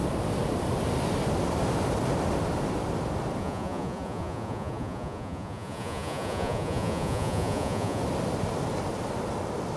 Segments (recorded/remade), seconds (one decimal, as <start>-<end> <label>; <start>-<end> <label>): 0.0-3.4 recorded; 3.4-8.0 remade; 8.0-9.8 recorded